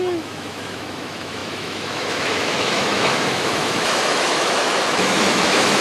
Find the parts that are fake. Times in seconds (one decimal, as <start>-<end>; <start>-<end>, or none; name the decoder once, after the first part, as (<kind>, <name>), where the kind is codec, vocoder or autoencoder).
0.0-5.8 (autoencoder, DAC-VAE)